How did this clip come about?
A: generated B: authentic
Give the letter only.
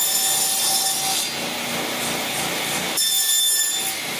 B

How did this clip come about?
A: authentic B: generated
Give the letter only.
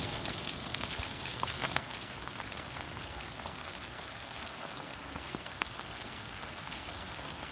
B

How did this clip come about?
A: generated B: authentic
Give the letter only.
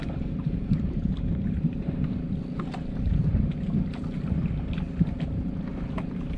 B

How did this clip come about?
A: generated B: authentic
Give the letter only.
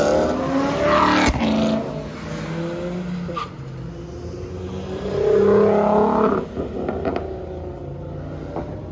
B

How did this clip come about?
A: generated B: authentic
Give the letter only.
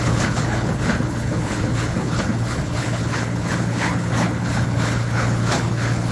A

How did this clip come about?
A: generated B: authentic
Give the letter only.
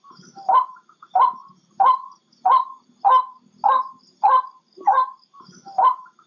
B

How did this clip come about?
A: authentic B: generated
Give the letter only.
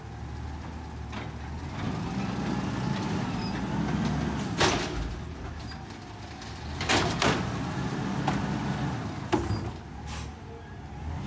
A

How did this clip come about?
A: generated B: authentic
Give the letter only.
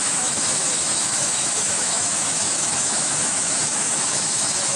A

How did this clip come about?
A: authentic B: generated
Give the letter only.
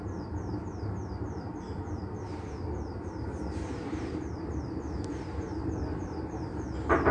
B